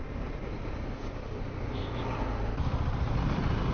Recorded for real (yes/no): yes